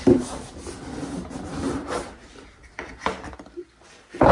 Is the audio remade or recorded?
recorded